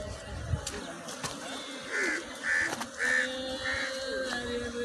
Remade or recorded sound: recorded